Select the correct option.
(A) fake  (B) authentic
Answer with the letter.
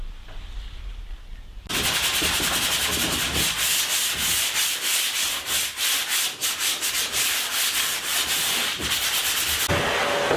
B